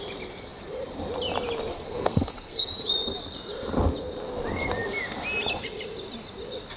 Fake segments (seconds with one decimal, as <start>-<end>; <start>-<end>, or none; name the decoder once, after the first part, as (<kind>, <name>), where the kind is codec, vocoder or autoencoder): 1.7-2.7 (codec, SNAC)